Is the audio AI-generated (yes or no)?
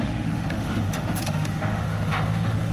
yes